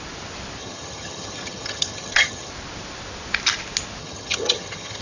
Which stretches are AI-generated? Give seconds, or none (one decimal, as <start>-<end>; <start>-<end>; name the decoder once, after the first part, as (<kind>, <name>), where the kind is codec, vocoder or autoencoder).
0.6-2.5 (vocoder, HiFi-GAN); 4.0-5.0